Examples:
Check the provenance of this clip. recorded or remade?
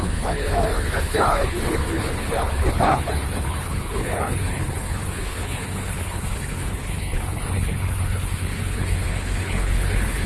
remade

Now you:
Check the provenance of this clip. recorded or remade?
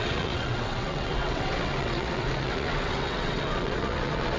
remade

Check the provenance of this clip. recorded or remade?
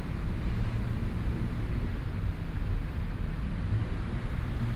recorded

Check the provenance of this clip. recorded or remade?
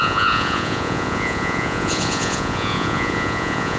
remade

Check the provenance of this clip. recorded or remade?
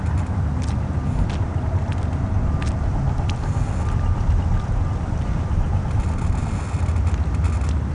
recorded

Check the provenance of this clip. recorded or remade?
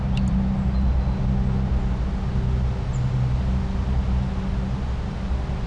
recorded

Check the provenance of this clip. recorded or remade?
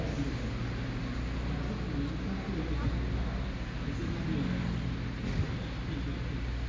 recorded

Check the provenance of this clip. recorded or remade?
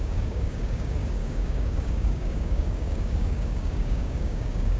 remade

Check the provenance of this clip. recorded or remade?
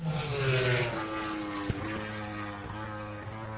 recorded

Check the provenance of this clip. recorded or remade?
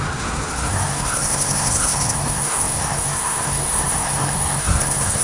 remade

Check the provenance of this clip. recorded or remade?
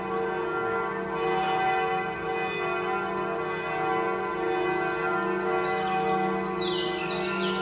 recorded